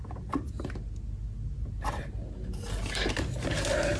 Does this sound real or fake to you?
real